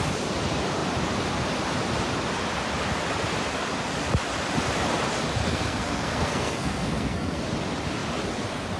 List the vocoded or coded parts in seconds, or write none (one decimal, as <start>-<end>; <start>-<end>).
5.5-7.4